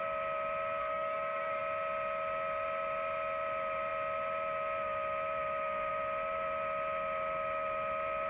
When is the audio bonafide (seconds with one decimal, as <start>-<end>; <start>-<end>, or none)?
0.0-0.8; 1.6-8.3